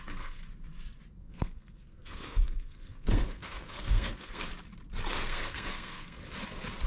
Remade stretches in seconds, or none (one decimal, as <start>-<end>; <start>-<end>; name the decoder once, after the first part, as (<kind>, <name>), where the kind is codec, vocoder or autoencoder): 0.0-0.4 (codec, SNAC); 1.2-4.5; 5.1-6.2